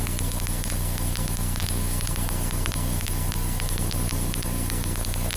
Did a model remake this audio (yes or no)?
yes